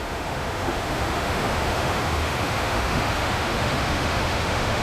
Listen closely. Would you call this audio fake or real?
fake